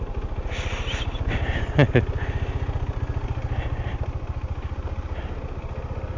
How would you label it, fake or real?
real